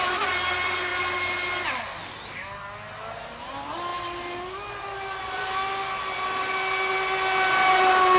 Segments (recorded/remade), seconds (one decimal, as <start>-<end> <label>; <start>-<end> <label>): 0.0-8.2 recorded